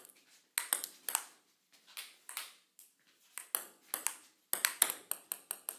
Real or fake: real